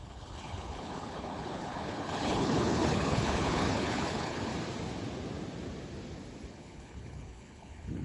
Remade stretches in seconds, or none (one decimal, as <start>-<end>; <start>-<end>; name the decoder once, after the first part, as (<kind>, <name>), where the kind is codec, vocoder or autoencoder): 0.0-4.5 (codec, HILCodec); 6.5-8.0